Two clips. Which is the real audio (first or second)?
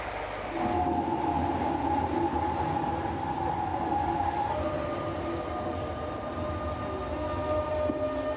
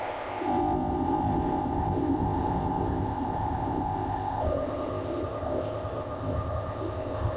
first